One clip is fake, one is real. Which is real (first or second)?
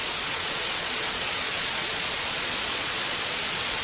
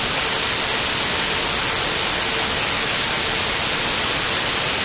second